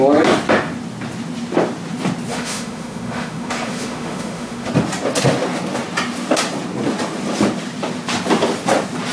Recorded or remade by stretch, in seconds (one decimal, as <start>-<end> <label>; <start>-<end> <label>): 0.0-2.3 recorded; 2.3-4.7 remade; 4.7-9.1 recorded